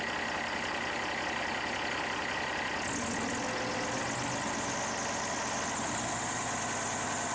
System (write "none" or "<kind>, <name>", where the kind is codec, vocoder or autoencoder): none